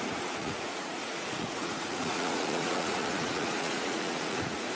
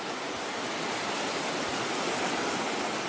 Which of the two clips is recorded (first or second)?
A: second